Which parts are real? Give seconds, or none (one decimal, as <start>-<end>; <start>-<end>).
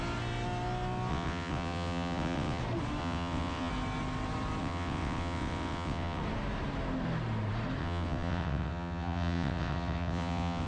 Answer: 0.0-1.1; 2.6-3.0; 3.7-4.6; 6.2-7.8